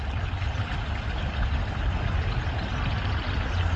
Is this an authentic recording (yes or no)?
yes